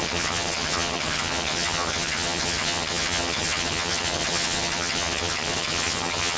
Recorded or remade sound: remade